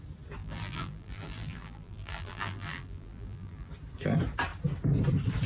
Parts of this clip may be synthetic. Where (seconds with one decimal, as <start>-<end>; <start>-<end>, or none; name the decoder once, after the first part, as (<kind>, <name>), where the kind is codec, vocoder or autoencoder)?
0.4-3.7 (vocoder, BigVGAN v2)